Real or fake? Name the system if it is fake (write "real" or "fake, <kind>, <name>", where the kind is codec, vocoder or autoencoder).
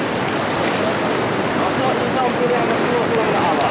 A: real